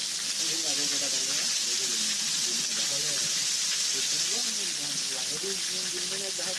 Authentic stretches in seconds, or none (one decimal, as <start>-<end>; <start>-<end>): 0.0-6.6